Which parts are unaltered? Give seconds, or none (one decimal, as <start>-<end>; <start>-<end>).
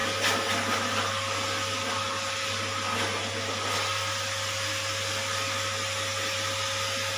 0.0-7.2